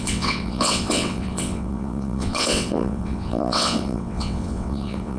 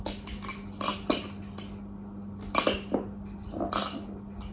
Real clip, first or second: second